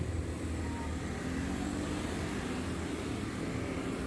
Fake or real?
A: real